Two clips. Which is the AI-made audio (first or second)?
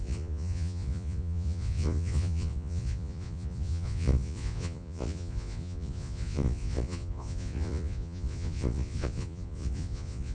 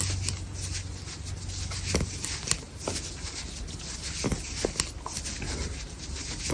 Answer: first